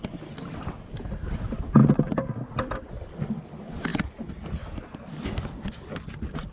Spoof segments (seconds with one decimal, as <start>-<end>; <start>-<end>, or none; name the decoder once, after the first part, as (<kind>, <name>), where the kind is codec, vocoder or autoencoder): none